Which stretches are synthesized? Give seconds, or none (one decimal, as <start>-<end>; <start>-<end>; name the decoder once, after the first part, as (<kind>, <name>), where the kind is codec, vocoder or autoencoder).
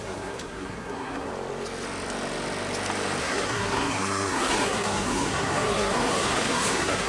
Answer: 0.0-1.3 (codec, SNAC); 3.2-7.1